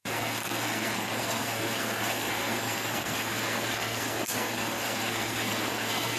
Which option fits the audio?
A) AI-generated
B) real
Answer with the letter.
A